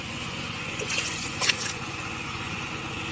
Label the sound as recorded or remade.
remade